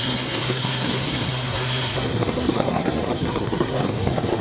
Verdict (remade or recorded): remade